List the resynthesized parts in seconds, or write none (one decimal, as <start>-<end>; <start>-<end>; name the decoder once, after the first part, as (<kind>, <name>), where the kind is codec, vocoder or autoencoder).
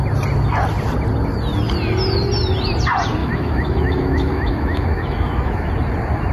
3.2-5.7 (autoencoder, DAC-VAE)